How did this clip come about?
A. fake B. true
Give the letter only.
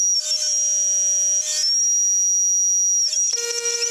B